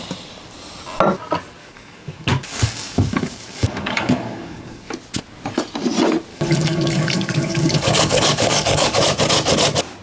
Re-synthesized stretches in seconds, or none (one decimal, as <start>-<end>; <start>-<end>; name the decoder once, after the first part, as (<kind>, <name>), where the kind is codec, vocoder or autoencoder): 1.6-4.9 (codec, DAC); 6.3-9.0